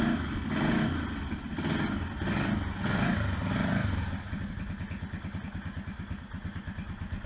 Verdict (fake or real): real